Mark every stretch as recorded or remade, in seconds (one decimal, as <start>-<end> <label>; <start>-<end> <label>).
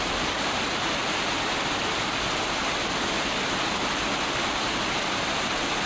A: 0.0-1.0 remade; 1.0-4.5 recorded; 4.5-5.9 remade